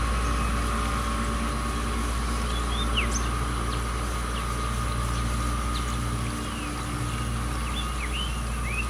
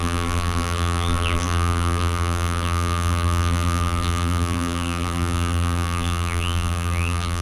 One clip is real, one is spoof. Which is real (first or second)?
first